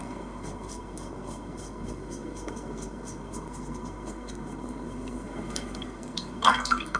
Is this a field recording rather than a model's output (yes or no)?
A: no